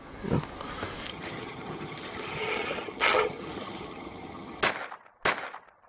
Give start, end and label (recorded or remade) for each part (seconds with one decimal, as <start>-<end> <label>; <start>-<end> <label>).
0.0-1.1 recorded; 1.1-4.6 remade; 4.6-5.9 recorded